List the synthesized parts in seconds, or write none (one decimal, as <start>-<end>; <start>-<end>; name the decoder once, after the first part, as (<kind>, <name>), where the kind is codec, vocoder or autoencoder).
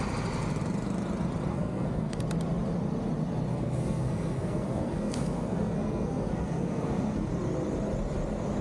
1.5-2.2 (codec, SNAC); 3.5-7.3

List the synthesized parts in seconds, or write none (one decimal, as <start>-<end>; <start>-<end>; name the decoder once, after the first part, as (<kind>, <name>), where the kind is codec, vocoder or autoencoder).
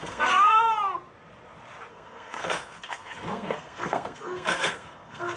0.0-0.7 (codec, SNAC); 1.9-5.4